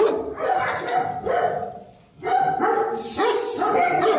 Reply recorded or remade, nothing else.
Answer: recorded